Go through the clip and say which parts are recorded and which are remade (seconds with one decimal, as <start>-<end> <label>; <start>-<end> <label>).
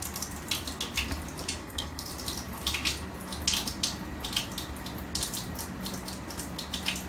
0.0-1.6 recorded; 1.6-2.1 remade; 2.1-7.1 recorded